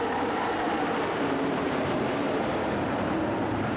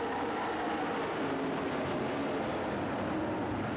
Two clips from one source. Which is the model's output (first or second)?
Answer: first